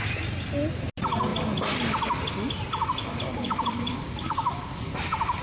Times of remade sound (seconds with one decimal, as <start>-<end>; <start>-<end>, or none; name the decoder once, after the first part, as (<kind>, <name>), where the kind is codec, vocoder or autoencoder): 3.0-4.9 (codec, DAC)